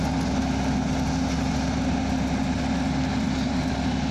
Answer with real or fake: real